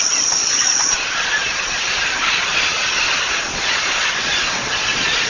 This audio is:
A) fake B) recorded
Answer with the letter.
A